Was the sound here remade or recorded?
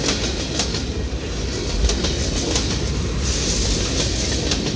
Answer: recorded